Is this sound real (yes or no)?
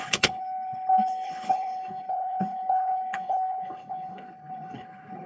no